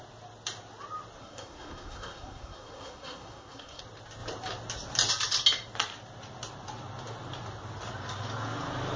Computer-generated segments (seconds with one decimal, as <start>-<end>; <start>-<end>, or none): 1.2-3.8